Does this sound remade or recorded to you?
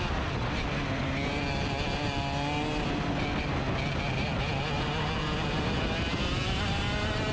recorded